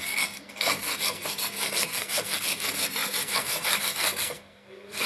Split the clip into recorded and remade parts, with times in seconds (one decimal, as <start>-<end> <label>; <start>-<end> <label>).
0.0-5.1 remade